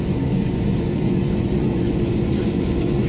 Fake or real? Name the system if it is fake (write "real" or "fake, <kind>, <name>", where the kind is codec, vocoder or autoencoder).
fake, vocoder, Vocos